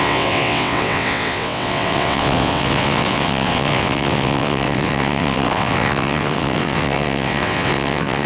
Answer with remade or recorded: remade